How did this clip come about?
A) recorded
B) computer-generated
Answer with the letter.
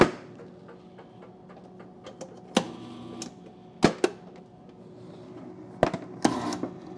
A